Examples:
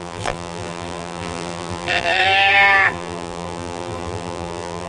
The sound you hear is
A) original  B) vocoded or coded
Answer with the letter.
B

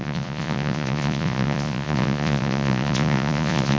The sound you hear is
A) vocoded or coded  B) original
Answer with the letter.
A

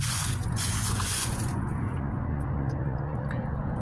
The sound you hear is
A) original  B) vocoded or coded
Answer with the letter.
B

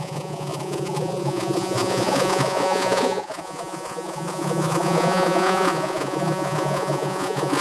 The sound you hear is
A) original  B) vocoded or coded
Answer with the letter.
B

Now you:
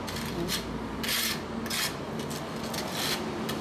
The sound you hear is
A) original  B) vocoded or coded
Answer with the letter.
A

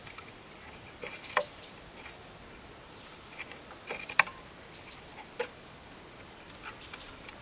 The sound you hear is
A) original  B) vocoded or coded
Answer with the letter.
A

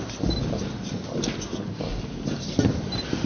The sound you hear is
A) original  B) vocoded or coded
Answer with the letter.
A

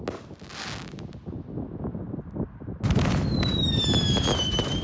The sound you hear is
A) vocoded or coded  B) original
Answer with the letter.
B